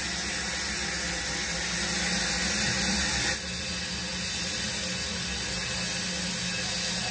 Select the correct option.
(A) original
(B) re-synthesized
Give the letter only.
A